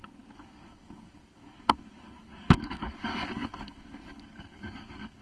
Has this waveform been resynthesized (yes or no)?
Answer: yes